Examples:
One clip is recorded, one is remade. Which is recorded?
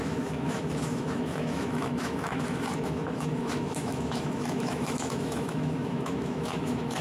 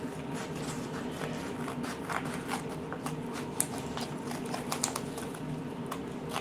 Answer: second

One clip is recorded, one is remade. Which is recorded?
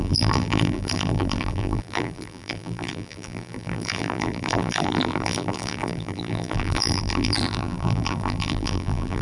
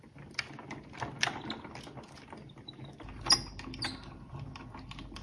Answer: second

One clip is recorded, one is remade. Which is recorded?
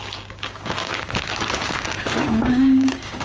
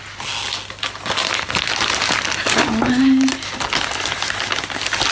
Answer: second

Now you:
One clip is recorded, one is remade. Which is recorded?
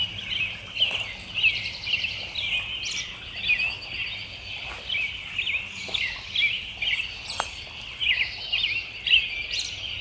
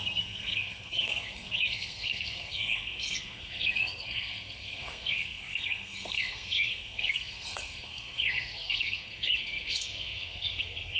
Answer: first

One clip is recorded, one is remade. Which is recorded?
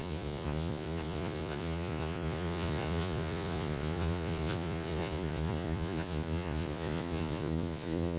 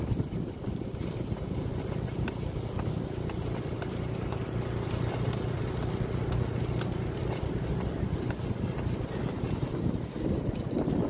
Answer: second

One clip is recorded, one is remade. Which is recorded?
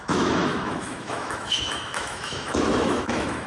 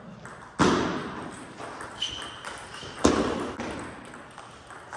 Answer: second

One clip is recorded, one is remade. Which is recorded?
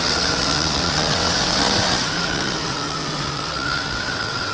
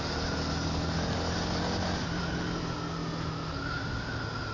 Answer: second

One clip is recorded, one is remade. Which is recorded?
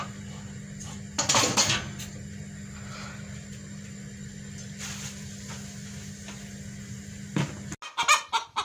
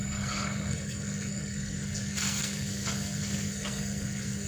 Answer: first